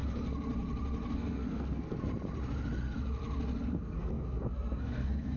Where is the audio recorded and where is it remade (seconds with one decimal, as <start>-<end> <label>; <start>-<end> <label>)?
0.0-1.1 recorded; 1.1-2.1 remade; 2.1-3.7 recorded; 3.7-5.4 remade